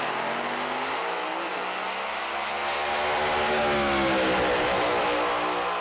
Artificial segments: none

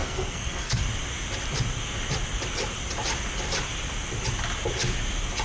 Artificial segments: 0.0-0.8 (codec, SNAC)

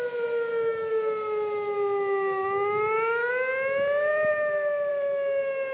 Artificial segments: 0.5-3.3 (autoencoder, DAC-VAE)

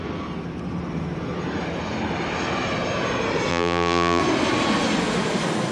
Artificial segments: 3.5-4.2 (vocoder, BigVGAN v2)